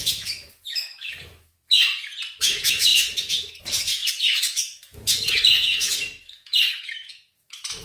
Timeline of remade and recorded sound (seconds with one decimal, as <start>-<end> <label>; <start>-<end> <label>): 0.0-1.9 remade; 1.9-2.4 recorded; 2.4-7.8 remade